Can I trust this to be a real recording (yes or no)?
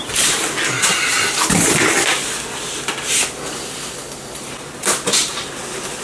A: yes